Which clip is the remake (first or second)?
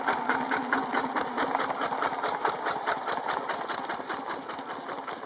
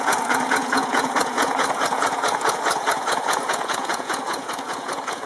second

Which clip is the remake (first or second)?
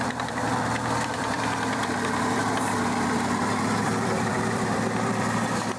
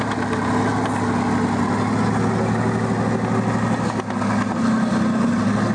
first